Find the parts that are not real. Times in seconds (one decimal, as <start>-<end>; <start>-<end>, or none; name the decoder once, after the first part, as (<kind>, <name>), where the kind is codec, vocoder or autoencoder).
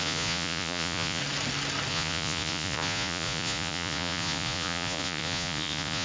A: 0.0-1.2 (vocoder, Vocos); 1.9-6.0